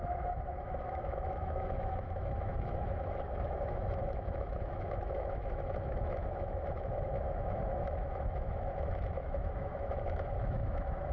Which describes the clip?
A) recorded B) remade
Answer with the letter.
B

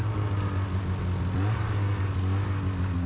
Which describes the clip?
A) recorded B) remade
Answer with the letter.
A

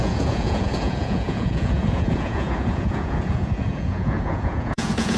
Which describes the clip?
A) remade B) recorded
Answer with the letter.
A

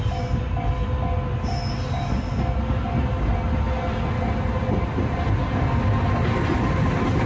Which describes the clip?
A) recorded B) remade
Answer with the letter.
A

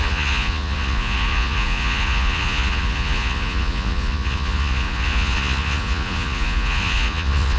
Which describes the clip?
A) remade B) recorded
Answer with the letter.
A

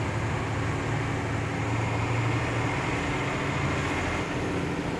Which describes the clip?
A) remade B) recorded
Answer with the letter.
B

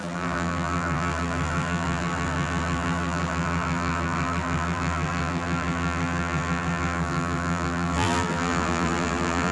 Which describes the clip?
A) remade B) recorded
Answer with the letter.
A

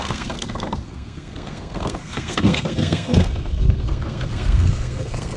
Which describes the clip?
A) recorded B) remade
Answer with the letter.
B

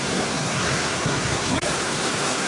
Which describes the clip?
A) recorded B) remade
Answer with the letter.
B